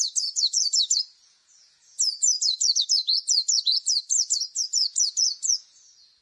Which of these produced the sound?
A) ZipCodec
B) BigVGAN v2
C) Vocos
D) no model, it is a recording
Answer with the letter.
C